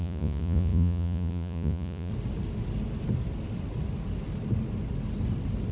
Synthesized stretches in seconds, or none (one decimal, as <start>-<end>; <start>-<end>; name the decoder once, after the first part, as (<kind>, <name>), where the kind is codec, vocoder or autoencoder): 0.0-2.1 (vocoder, Vocos)